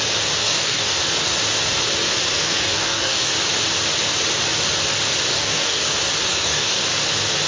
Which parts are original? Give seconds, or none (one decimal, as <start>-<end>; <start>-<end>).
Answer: 0.0-0.4; 1.0-2.3; 3.3-5.3; 5.8-6.3; 6.8-7.5